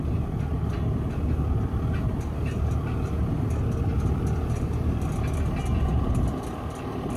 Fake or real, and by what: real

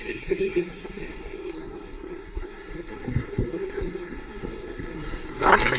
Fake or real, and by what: fake, codec, SNAC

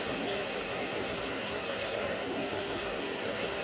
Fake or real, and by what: fake, codec, SNAC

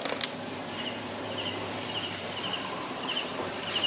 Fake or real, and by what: fake, vocoder, BigVGAN v2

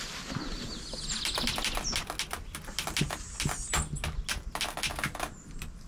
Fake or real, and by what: real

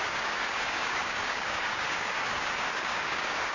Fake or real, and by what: fake, codec, DAC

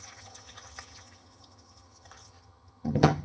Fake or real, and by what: fake, vocoder, HiFi-GAN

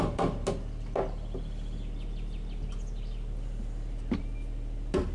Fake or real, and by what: real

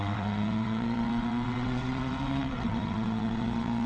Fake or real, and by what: fake, vocoder, WaveNeXt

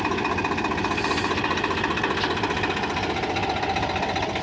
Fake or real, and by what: real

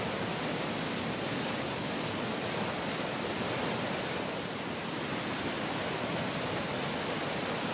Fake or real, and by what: real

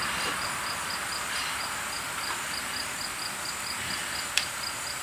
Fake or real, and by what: fake, vocoder, BigVGAN v2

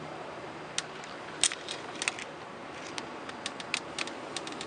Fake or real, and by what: real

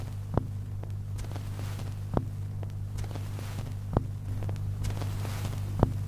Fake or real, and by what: real